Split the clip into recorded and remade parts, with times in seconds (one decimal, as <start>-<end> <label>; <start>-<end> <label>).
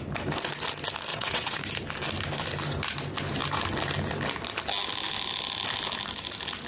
0.0-1.1 recorded; 1.1-1.6 remade; 1.6-6.7 recorded